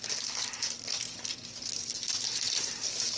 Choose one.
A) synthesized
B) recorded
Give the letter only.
B